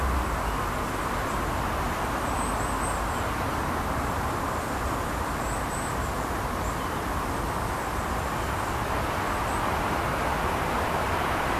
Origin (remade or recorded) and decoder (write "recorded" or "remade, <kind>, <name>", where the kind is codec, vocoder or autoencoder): recorded